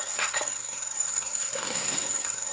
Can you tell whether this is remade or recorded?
remade